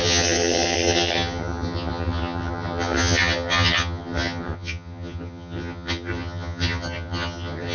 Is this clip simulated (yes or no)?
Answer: yes